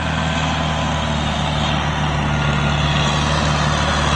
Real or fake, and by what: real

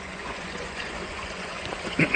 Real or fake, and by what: fake, vocoder, Vocos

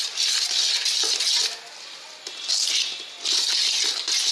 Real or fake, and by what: real